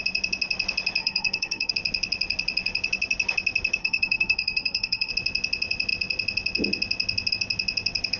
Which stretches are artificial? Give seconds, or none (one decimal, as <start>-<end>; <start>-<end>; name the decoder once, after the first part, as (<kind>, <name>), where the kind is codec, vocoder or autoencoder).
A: 1.0-1.7 (codec, SNAC); 3.8-5.1